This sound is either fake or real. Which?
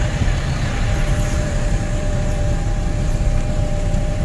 fake